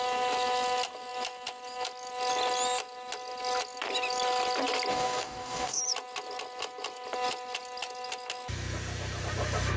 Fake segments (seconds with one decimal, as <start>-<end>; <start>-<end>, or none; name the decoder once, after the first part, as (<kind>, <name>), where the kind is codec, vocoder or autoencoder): 4.9-5.8 (codec, DAC)